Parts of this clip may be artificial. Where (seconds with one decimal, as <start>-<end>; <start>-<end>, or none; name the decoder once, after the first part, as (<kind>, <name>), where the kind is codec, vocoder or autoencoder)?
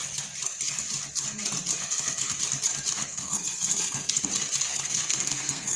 1.8-2.4 (codec, SNAC); 3.0-4.2; 4.7-5.8